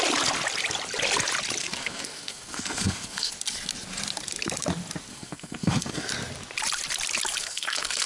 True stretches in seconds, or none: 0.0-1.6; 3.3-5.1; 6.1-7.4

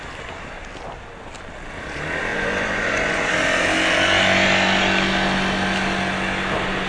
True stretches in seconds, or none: 0.0-2.3; 3.3-6.9

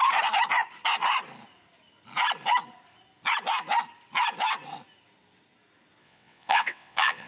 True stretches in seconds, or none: 0.0-6.0

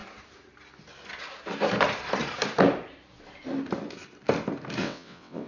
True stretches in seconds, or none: 0.0-4.8

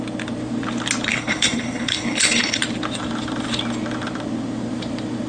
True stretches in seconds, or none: 0.0-1.1; 2.6-5.3